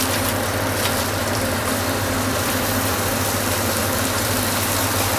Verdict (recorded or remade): remade